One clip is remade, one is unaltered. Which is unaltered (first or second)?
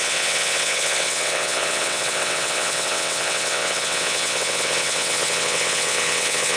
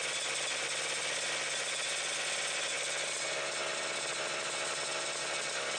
second